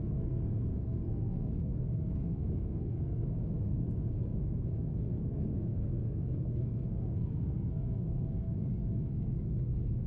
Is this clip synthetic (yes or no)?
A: yes